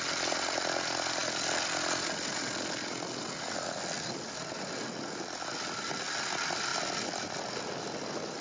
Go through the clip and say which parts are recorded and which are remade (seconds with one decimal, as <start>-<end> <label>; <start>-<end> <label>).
0.0-8.4 recorded